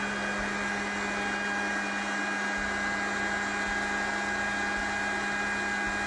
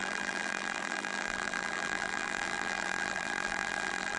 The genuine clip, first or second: first